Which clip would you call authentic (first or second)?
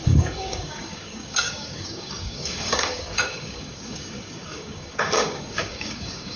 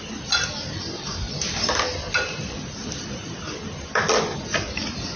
second